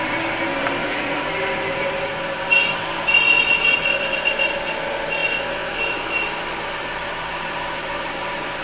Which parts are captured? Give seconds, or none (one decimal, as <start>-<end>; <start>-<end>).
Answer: 0.0-0.8; 1.3-8.6